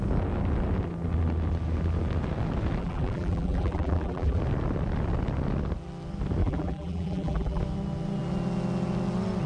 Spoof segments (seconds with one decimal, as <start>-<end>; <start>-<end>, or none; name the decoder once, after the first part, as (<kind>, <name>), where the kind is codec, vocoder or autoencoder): 2.8-4.4 (vocoder, BigVGAN v2); 6.4-7.6